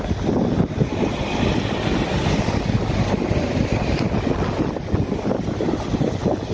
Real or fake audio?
real